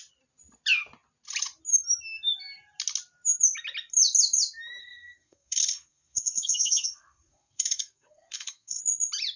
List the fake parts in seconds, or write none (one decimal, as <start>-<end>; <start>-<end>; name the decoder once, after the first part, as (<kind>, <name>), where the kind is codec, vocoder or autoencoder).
4.8-8.8 (codec, SNAC)